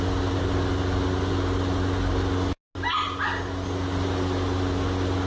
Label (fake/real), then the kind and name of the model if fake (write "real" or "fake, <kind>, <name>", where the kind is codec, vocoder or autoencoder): real